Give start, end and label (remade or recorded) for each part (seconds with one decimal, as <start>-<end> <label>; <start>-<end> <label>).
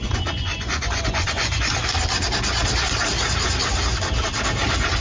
0.0-1.7 remade; 1.7-5.0 recorded